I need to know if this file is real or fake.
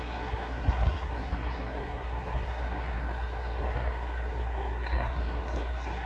fake